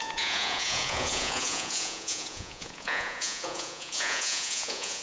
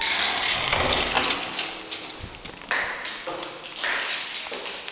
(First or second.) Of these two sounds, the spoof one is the first